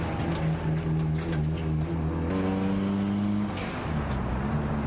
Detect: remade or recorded recorded